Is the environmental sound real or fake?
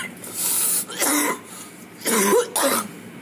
real